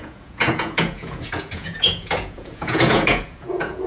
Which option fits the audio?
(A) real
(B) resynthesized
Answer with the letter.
B